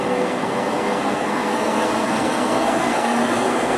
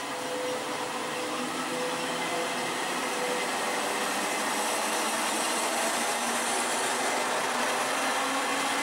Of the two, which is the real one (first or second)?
second